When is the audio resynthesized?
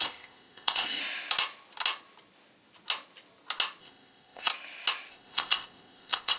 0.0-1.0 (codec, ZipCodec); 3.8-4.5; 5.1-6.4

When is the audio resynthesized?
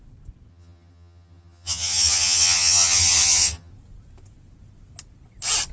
0.5-3.7 (vocoder, HiFi-GAN)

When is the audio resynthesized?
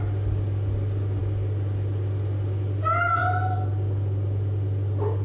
none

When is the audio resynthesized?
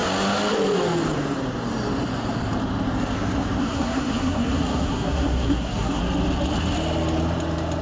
3.6-6.0 (codec, SNAC)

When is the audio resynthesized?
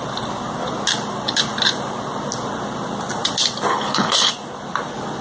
3.7-4.3 (codec, HILCodec)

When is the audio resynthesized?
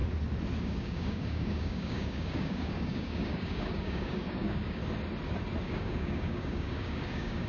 0.6-4.8 (codec, DAC); 5.6-7.5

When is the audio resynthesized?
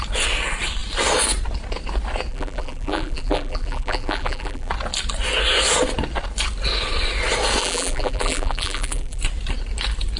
2.3-4.7 (vocoder, BigVGAN v2); 7.6-9.2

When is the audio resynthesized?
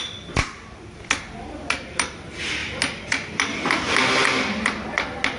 0.4-2.1 (vocoder, BigVGAN v2)